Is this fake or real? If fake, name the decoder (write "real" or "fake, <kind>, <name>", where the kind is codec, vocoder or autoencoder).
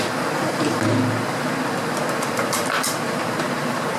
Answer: fake, vocoder, BigVGAN v2